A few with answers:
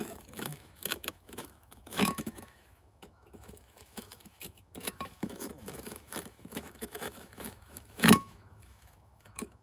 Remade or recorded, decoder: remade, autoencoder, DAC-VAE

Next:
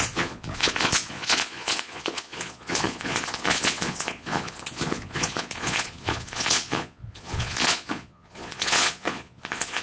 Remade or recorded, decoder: remade, vocoder, Vocos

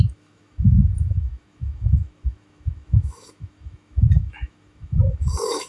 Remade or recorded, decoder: remade, autoencoder, DAC-VAE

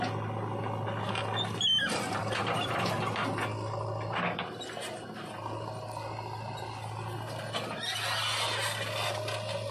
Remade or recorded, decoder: recorded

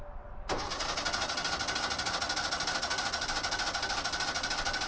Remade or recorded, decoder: recorded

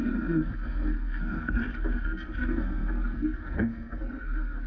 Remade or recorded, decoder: remade, codec, SNAC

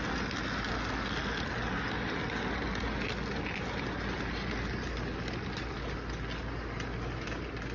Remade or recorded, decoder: recorded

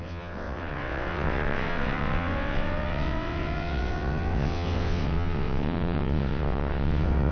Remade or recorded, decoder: remade, vocoder, WaveNeXt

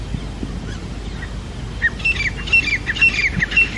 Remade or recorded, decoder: recorded